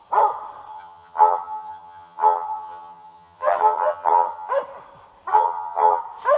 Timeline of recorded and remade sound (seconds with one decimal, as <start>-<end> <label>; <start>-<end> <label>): 0.0-0.7 recorded; 0.7-4.5 remade; 4.5-5.3 recorded; 5.3-6.0 remade; 6.0-6.4 recorded